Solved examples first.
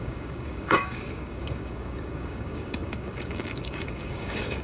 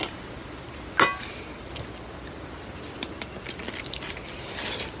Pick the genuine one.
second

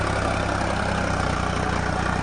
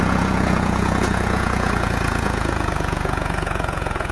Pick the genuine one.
first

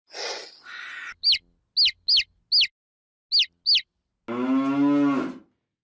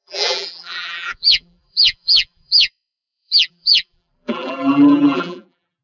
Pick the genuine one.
first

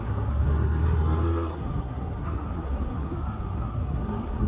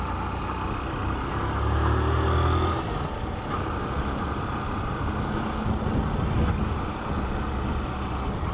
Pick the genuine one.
second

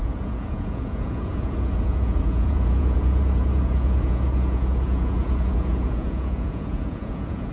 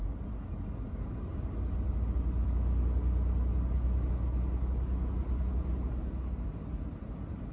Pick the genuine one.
second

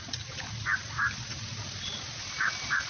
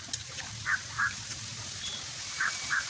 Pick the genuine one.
first